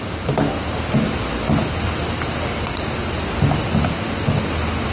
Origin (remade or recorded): recorded